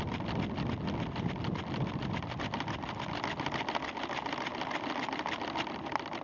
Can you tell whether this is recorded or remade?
recorded